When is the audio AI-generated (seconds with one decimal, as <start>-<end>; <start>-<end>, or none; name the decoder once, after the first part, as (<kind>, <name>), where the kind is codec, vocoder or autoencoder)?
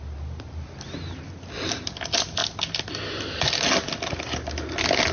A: none